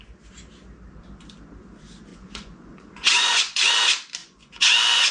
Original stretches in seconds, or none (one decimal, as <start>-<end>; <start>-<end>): 0.0-2.1; 3.7-4.2